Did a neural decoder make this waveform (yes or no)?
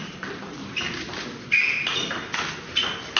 no